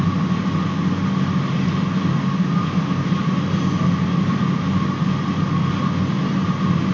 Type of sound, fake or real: real